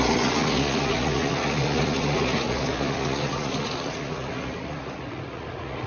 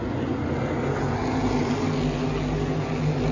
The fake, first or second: first